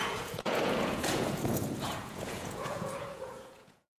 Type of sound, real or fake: fake